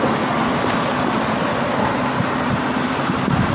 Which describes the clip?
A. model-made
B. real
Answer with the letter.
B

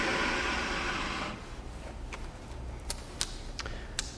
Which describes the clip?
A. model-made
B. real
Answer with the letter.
B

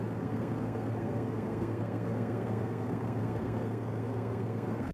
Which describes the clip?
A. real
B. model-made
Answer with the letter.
B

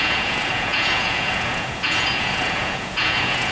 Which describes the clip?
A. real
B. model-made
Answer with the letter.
B